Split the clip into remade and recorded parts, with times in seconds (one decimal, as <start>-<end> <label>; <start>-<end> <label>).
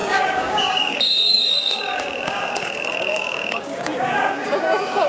0.0-5.1 remade